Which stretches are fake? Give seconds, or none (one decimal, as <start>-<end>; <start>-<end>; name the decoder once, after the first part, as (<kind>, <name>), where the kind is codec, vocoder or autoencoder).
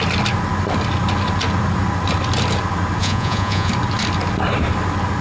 3.0-3.7 (vocoder, Vocos)